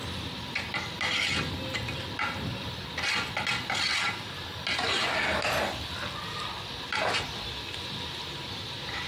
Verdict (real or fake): real